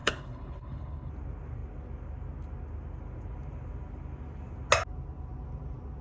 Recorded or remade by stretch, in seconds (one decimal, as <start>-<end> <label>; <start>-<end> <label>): 0.0-1.1 remade; 1.1-6.0 recorded